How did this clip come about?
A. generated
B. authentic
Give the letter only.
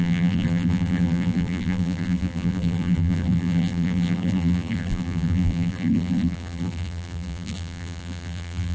A